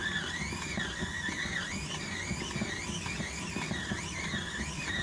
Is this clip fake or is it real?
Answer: real